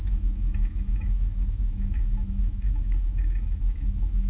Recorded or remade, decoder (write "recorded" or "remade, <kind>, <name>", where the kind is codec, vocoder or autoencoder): remade, autoencoder, DAC-VAE